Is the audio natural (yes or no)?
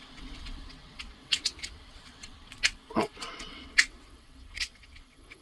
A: no